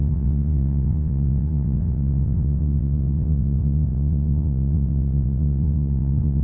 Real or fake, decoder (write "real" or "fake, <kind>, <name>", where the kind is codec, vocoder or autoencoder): fake, vocoder, WaveNeXt